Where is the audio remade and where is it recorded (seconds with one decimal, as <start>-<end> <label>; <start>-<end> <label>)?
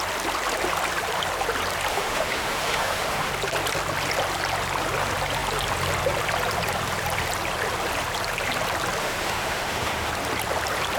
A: 0.0-1.9 recorded; 1.9-3.3 remade; 3.3-9.0 recorded; 9.0-10.1 remade; 10.1-11.0 recorded